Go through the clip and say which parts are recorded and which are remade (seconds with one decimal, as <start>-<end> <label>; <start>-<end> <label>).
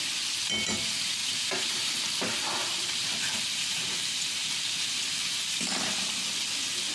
0.0-1.2 recorded; 1.2-2.2 remade; 2.2-2.6 recorded; 2.6-6.2 remade; 6.2-6.9 recorded